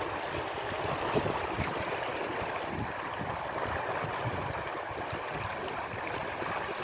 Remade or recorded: recorded